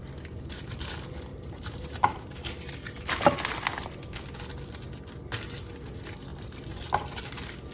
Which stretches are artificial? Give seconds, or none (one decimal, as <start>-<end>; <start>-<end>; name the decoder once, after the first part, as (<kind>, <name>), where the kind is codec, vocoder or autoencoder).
1.3-2.7 (vocoder, BigVGAN v2); 6.3-7.2